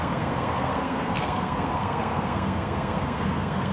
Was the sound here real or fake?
fake